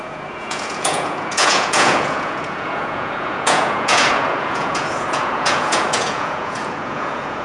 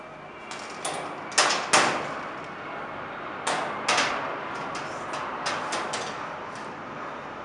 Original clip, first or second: second